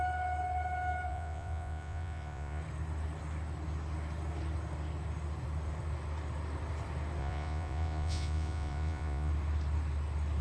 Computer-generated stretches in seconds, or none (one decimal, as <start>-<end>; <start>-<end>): 1.1-2.6; 7.2-9.3